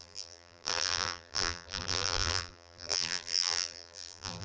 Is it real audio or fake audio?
fake